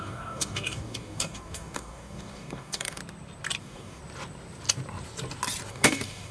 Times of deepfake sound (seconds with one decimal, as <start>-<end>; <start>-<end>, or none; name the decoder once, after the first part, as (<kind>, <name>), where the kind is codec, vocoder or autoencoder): 0.0-3.0 (codec, DAC); 3.6-4.0; 5.7-6.3